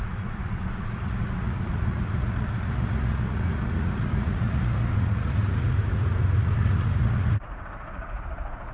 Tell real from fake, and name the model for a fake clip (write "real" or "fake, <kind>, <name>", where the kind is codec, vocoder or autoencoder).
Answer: fake, vocoder, Vocos